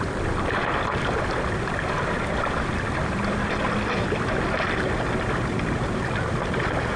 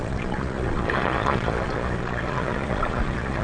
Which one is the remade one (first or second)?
second